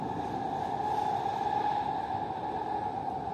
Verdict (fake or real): real